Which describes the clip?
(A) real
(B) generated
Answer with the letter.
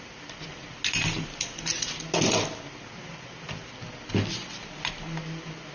A